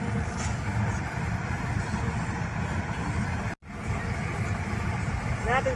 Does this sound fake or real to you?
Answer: real